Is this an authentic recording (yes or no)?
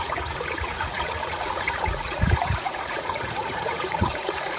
no